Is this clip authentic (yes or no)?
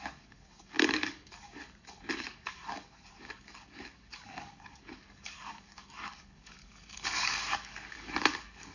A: no